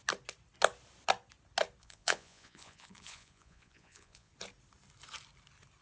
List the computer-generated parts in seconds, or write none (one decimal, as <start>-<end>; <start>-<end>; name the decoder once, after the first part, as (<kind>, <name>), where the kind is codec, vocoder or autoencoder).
1.8-4.3 (vocoder, Vocos)